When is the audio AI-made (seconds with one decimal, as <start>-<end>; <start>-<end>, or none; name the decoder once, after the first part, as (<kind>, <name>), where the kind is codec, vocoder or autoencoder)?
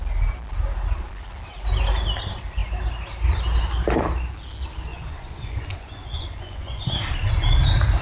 4.9-6.8 (vocoder, Vocos)